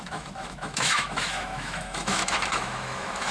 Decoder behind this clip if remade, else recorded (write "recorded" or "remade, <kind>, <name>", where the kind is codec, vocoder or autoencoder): remade, autoencoder, DAC-VAE